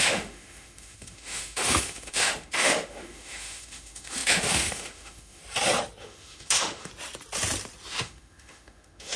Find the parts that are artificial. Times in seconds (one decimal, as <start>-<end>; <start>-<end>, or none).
0.0-5.4; 6.0-6.9; 7.9-9.2